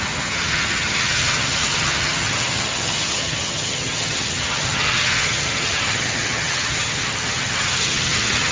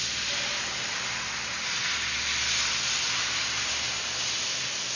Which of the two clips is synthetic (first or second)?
first